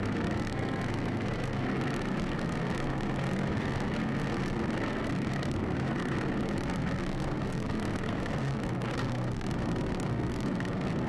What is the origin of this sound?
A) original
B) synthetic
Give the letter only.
B